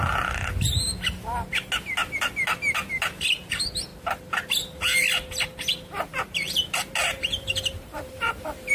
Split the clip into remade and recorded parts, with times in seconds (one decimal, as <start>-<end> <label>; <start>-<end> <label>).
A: 0.0-7.2 recorded; 7.2-8.7 remade